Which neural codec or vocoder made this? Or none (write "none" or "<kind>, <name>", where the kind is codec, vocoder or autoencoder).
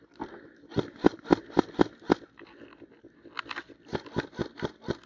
none